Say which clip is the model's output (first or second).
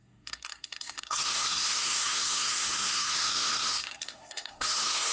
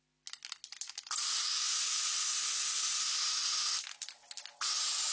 first